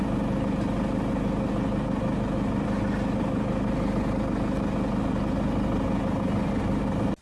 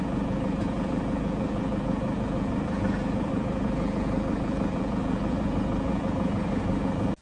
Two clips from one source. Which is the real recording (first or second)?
first